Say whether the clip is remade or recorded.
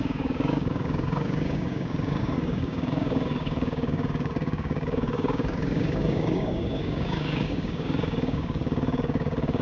remade